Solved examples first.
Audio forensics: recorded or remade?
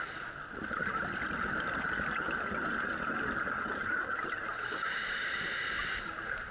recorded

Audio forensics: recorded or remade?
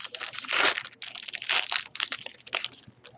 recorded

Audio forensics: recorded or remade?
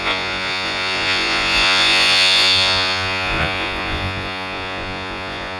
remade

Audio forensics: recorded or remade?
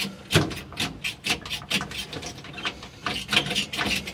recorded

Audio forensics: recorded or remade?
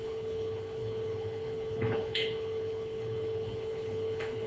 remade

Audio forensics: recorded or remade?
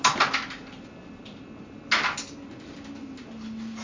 recorded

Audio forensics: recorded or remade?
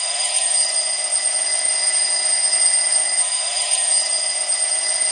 remade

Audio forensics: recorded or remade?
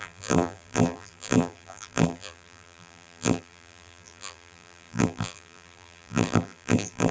remade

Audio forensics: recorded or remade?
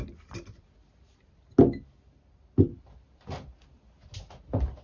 recorded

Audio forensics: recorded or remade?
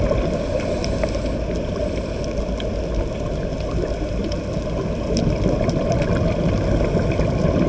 recorded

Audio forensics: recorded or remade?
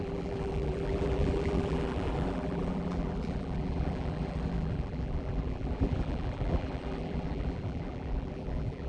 remade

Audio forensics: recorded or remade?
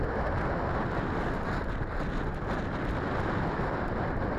recorded